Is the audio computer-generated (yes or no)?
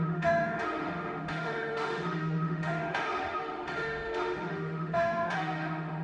yes